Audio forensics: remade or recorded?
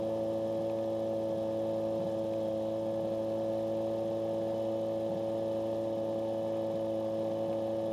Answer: recorded